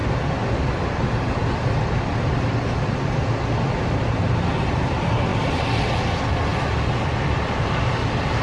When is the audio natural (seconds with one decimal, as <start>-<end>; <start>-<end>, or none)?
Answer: 0.0-8.4